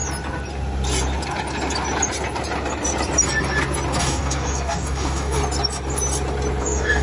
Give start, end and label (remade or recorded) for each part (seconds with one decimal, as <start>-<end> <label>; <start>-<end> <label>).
0.0-4.0 recorded; 4.0-5.4 remade; 5.4-6.6 recorded; 6.6-7.0 remade